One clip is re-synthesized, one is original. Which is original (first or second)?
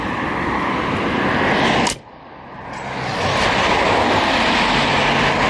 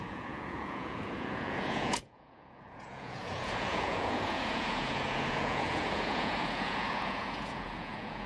first